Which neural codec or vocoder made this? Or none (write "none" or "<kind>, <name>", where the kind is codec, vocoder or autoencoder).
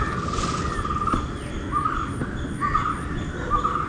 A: none